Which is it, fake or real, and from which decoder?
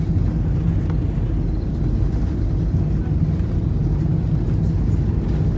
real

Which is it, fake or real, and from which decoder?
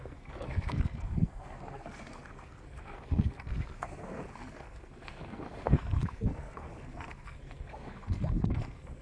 fake, codec, SNAC